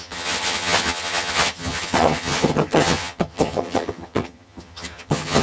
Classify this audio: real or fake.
fake